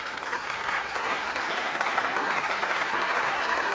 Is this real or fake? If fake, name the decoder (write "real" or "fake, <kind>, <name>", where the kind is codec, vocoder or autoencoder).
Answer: fake, codec, SNAC